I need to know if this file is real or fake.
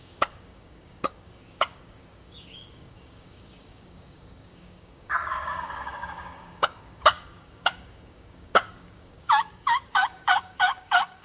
fake